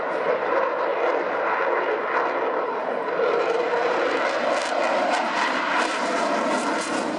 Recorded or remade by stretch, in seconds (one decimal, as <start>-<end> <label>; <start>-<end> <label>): 0.0-0.9 remade; 0.9-5.2 recorded; 5.2-7.2 remade